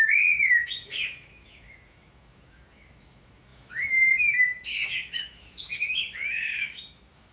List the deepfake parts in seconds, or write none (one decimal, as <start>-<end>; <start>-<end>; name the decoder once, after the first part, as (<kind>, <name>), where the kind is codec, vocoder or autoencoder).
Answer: 0.0-7.3 (autoencoder, DAC-VAE)